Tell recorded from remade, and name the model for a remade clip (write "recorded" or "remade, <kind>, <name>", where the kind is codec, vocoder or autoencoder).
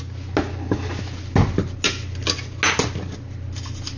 recorded